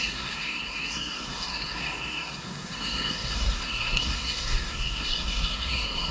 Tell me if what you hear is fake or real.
fake